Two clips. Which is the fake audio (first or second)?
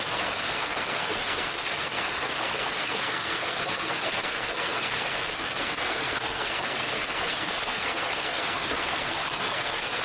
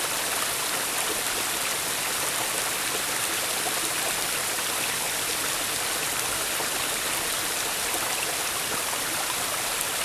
first